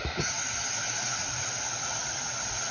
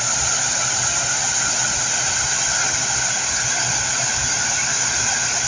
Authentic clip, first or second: second